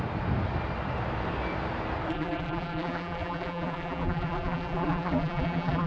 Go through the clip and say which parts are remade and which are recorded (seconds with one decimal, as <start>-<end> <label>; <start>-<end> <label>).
0.0-2.1 recorded; 2.1-5.9 remade